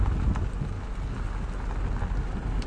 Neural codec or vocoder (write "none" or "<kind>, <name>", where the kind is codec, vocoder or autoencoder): none